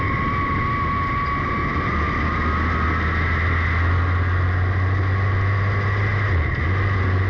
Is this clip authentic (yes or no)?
yes